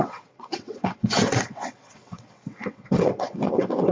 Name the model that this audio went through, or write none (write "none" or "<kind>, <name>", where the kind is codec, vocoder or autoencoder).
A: vocoder, WaveNeXt